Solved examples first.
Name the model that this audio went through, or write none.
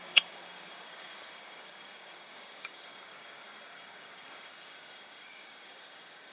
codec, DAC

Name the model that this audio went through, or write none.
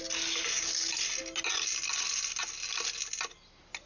none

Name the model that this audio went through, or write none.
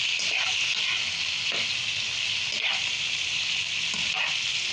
none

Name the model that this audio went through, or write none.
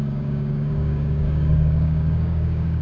codec, DAC